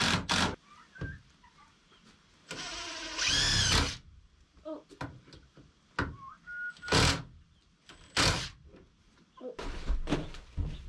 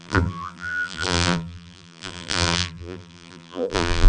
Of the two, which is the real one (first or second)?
first